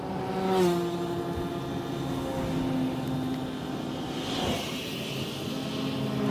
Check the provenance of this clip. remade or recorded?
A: recorded